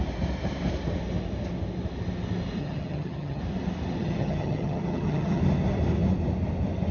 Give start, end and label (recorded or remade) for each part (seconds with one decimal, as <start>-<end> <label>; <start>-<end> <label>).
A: 0.0-2.6 recorded; 2.6-3.4 remade; 3.4-4.0 recorded; 4.0-5.4 remade; 5.4-6.9 recorded